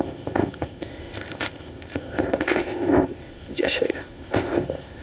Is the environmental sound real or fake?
fake